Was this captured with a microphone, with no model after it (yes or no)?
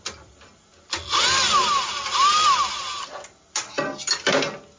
yes